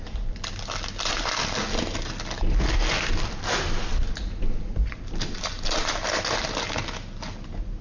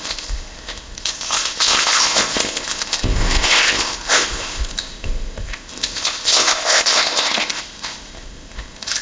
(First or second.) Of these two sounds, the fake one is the second